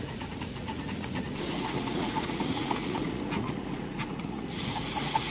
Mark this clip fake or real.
fake